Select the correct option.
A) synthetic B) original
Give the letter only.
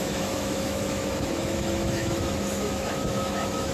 A